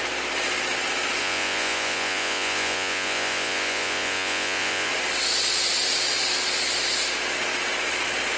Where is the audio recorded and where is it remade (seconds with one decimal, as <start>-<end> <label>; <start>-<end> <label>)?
0.0-1.2 recorded; 1.2-4.9 remade; 4.9-8.4 recorded